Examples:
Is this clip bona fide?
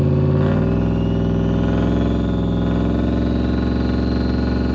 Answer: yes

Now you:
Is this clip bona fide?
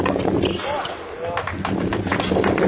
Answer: yes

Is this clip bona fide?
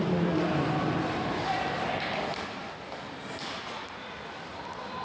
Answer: yes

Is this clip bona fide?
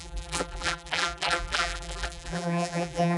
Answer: no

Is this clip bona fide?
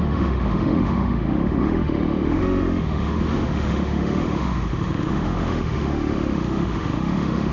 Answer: no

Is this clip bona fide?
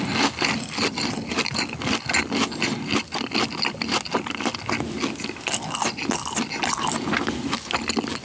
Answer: yes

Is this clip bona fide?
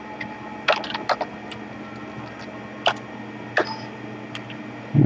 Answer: yes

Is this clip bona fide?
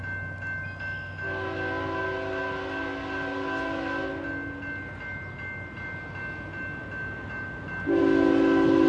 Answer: yes